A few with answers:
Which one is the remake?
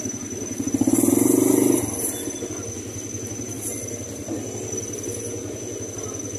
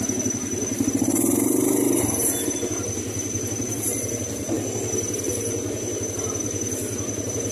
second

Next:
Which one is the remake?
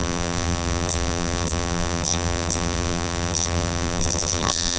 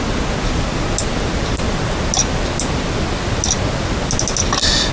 first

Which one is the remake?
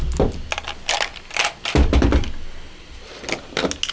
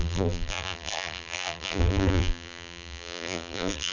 second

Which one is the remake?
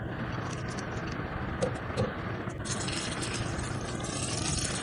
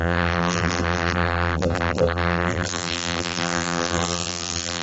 second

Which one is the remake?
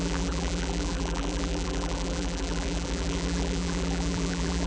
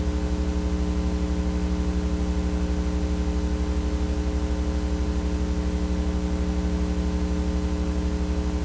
first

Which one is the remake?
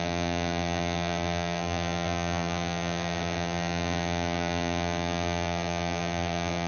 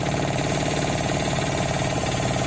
first